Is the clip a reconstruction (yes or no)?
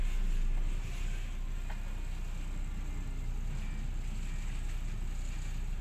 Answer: no